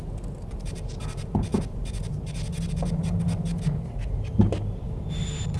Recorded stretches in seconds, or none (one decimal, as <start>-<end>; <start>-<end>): 0.0-5.6